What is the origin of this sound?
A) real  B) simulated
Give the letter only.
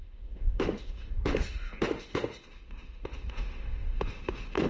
B